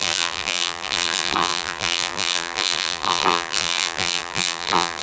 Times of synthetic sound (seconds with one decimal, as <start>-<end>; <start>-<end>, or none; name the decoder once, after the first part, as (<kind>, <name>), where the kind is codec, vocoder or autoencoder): 0.0-5.0 (vocoder, BigVGAN v2)